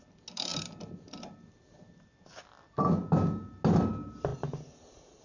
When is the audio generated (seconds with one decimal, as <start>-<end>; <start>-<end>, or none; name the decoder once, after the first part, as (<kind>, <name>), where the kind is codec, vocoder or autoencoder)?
0.5-2.4 (vocoder, BigVGAN v2)